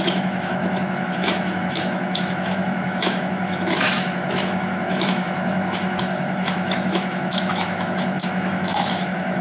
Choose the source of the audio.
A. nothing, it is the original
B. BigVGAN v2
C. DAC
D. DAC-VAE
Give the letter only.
D